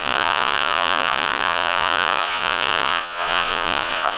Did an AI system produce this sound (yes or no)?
yes